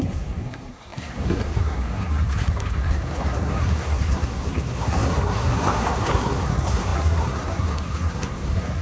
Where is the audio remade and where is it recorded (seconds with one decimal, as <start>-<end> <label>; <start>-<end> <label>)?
0.0-8.8 remade